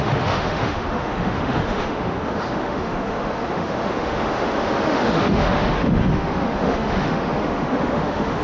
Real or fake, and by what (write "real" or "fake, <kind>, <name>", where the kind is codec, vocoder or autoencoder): fake, autoencoder, DAC-VAE